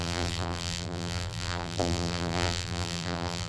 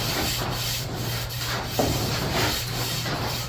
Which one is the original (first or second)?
second